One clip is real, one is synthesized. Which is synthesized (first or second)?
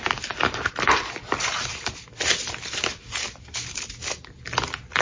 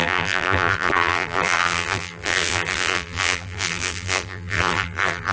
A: second